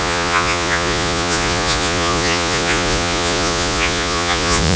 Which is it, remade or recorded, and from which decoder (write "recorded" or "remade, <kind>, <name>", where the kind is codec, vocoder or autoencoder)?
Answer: remade, vocoder, Vocos